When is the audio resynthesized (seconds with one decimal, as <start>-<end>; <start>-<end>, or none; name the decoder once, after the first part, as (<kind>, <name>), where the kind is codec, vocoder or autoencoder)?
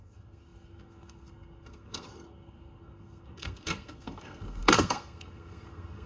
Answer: 0.0-6.1 (codec, SNAC)